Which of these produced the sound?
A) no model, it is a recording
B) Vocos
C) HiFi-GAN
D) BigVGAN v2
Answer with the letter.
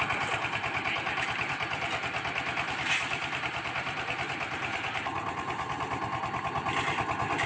A